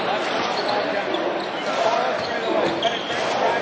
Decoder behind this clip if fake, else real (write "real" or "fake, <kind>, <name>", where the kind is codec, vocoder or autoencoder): real